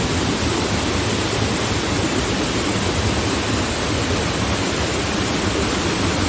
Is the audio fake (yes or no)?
no